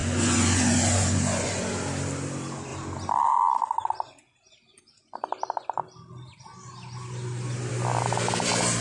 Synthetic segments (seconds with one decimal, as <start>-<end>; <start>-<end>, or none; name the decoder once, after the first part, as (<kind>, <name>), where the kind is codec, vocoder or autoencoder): 0.0-1.6 (vocoder, Vocos)